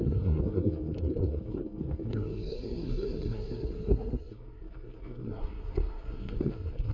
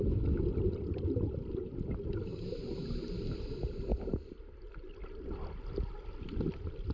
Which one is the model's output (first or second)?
first